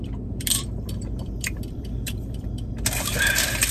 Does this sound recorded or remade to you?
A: remade